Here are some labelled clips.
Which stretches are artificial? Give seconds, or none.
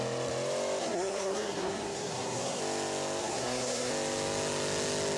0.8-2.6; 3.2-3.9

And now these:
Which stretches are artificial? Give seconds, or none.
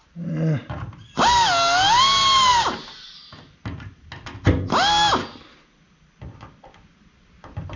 0.6-1.1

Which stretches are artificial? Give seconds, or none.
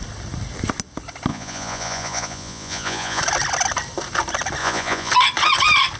1.3-3.2; 4.6-5.1